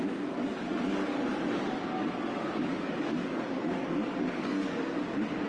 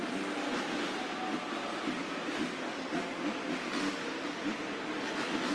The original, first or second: second